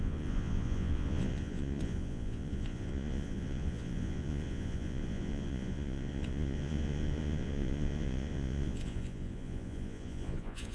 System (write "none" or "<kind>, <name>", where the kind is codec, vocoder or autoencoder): vocoder, Vocos